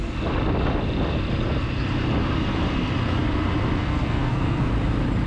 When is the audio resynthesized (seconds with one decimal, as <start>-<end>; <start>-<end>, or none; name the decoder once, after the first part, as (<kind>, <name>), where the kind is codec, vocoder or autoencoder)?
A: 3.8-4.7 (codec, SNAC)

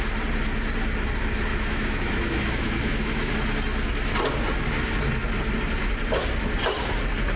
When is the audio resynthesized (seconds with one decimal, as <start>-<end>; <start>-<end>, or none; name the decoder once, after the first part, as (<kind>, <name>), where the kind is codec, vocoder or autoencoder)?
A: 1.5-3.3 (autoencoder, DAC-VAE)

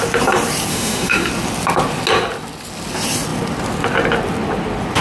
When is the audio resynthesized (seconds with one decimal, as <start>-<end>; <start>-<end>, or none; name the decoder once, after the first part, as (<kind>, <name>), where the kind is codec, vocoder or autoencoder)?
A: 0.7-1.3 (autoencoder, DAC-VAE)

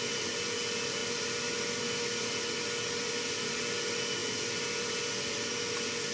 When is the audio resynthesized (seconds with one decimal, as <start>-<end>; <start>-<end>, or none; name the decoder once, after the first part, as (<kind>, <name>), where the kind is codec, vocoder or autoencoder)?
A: 4.2-5.5 (vocoder, BigVGAN v2)